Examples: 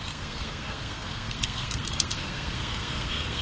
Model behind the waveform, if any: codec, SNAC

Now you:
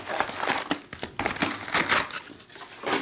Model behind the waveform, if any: none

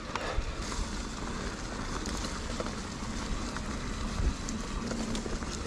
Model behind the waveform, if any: none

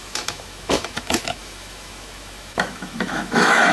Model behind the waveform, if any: autoencoder, DAC-VAE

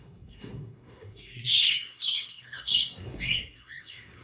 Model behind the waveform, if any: codec, SNAC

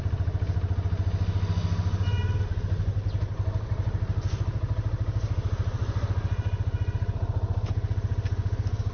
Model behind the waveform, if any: none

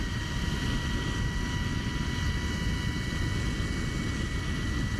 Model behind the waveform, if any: none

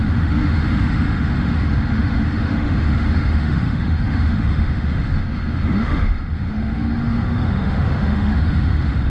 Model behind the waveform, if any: autoencoder, DAC-VAE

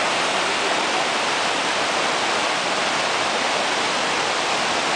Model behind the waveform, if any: none